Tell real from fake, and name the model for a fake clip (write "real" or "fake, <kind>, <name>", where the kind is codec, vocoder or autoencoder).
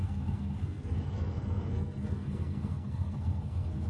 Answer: fake, codec, SNAC